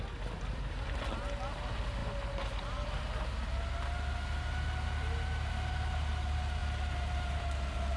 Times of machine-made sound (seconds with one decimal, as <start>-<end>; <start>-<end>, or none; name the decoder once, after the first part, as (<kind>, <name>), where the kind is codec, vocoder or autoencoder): none